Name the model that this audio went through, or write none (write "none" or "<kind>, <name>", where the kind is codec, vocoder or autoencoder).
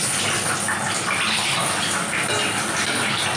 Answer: none